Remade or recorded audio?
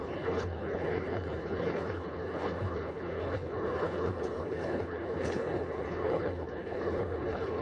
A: remade